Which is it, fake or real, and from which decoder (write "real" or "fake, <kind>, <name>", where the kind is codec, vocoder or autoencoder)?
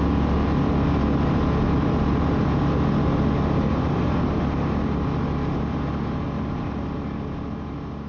real